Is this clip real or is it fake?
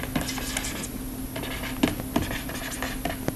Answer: real